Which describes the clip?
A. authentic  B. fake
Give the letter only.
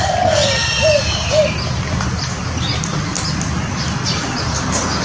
A